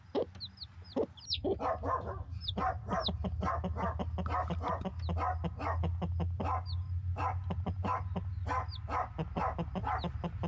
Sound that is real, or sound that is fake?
real